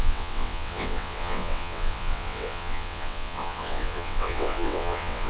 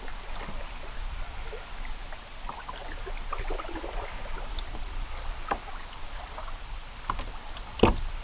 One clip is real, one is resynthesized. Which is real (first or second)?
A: second